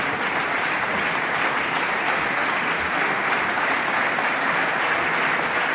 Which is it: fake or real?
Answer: real